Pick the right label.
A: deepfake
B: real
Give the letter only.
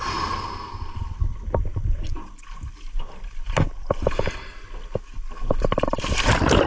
B